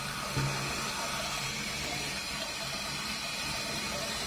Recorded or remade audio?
recorded